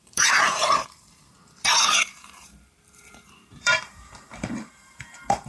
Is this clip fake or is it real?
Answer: fake